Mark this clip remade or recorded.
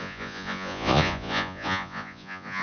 remade